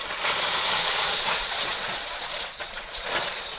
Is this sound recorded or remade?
remade